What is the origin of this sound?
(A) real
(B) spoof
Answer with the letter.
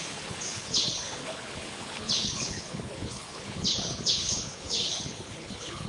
B